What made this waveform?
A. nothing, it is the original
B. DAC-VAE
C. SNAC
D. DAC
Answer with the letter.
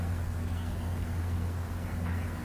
C